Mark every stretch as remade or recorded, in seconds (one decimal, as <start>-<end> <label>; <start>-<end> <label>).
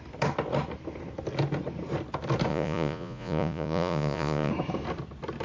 0.0-2.5 recorded; 2.5-4.5 remade; 4.5-5.4 recorded